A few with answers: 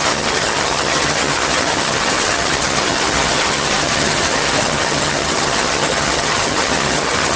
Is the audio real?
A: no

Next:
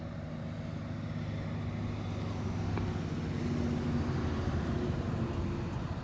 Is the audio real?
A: yes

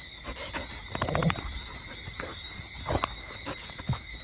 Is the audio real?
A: yes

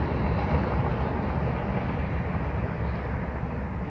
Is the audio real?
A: yes